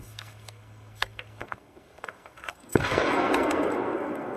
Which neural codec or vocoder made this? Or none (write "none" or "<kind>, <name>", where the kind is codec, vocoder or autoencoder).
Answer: codec, SNAC